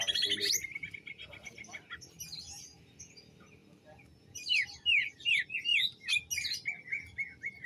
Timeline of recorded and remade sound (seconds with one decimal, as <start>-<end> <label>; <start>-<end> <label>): 0.0-7.7 recorded